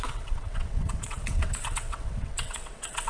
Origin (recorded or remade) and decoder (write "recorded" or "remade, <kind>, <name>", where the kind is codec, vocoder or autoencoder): remade, vocoder, WaveNeXt